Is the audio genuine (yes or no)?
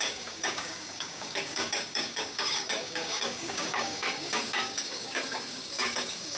no